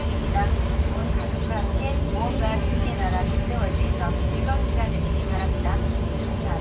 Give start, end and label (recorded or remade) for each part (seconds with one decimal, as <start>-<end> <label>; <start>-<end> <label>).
0.0-6.6 recorded